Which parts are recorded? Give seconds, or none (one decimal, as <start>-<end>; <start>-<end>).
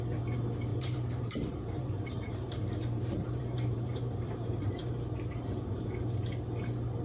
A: 0.0-0.7; 4.9-7.0